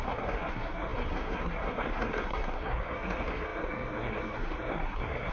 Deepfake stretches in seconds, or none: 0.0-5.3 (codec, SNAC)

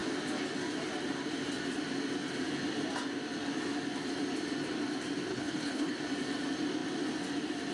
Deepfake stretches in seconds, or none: 5.3-6.0 (codec, HILCodec)

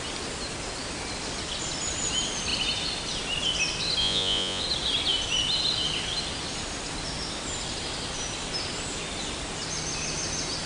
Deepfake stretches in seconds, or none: 4.0-4.6 (vocoder, Vocos)

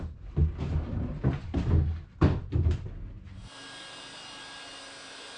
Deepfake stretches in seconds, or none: none

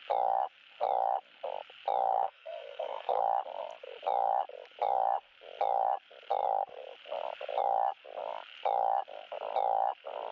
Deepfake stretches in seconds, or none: 2.1-3.2 (codec, SNAC)